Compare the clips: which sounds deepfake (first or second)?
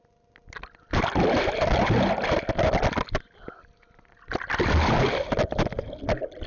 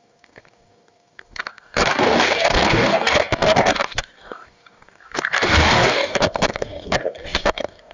second